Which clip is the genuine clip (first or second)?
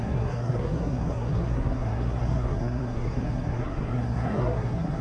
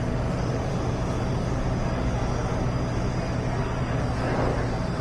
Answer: second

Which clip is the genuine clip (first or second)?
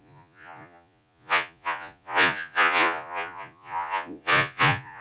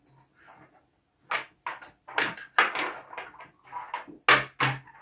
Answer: second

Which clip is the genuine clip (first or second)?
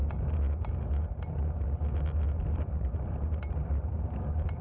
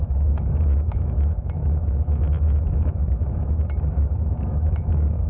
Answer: first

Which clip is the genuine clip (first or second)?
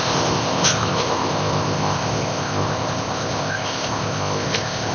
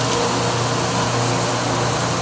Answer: second